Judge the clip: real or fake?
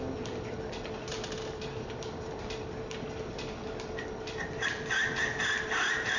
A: real